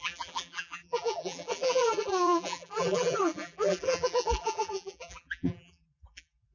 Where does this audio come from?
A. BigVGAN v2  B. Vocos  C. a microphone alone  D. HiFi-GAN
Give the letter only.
A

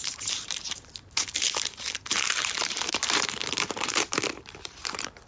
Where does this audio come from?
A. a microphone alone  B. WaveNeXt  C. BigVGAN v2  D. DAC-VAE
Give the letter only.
C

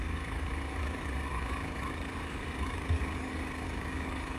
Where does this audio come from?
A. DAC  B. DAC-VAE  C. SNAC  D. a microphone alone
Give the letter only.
A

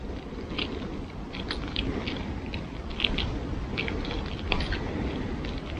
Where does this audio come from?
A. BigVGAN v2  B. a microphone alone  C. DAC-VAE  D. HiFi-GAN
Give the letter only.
B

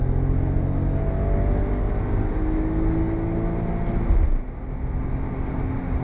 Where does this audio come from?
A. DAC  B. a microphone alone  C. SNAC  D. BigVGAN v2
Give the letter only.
B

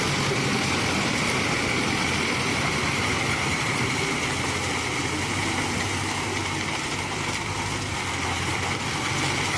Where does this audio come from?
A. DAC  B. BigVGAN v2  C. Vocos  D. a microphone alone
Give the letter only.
D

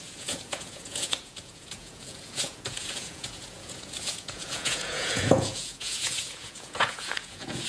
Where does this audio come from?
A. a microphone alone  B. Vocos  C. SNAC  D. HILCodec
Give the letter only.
B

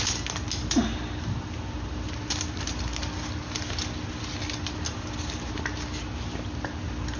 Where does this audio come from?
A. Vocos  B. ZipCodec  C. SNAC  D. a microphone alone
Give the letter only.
D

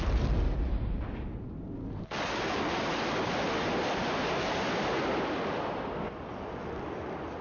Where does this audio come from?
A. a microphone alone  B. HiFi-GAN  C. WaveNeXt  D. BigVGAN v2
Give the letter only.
A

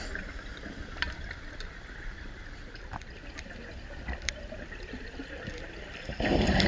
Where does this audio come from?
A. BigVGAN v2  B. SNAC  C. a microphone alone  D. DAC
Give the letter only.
A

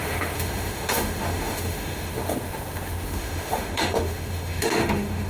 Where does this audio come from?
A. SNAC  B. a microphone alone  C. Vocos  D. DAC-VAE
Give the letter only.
D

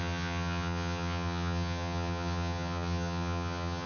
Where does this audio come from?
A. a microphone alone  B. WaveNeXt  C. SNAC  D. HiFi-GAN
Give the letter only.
D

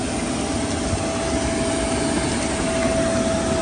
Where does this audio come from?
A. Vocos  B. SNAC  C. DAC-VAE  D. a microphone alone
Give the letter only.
D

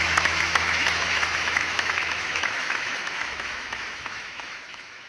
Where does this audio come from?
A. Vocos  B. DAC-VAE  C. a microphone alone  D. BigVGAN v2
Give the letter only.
B